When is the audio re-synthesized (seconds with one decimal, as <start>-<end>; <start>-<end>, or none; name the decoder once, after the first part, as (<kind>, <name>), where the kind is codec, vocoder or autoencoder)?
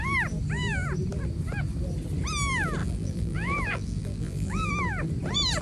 2.8-4.7 (vocoder, BigVGAN v2)